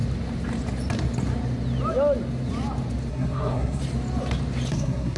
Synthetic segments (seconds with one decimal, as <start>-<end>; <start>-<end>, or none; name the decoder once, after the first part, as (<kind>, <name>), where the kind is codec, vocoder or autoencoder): 3.1-3.8 (codec, SNAC); 4.7-5.2